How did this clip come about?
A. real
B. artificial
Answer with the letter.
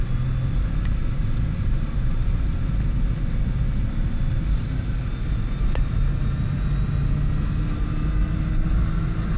A